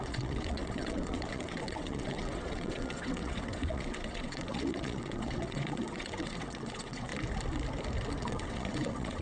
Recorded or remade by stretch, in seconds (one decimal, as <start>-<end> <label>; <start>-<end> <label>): 0.0-7.1 remade; 7.1-8.2 recorded; 8.2-9.2 remade